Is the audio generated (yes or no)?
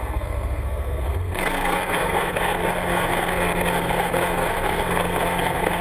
yes